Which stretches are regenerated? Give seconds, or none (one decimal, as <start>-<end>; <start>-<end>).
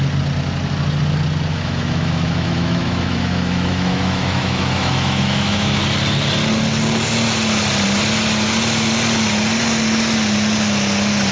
1.5-5.8